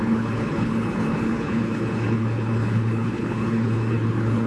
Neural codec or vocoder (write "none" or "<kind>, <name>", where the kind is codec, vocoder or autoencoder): codec, HILCodec